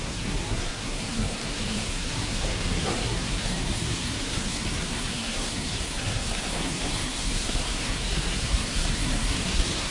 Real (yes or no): no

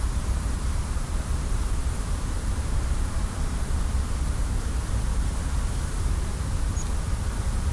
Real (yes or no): no